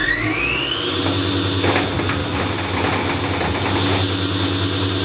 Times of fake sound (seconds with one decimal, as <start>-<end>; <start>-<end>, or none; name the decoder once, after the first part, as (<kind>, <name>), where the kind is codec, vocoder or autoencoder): 0.0-1.3 (vocoder, BigVGAN v2); 2.2-3.2